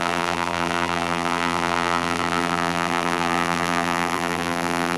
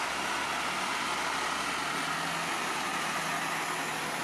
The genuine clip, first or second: second